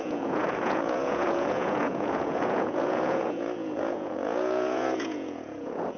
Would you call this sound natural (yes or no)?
no